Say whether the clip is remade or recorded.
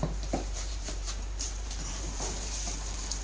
remade